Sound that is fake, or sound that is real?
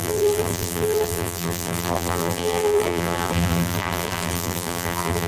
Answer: fake